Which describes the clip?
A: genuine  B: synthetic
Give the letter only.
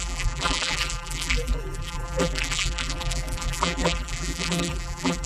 B